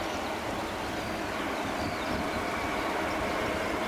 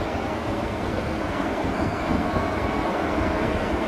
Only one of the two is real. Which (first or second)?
first